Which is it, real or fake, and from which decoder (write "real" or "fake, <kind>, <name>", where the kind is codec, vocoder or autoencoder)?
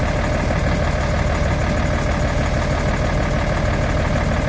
real